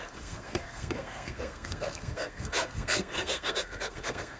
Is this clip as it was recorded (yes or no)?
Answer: no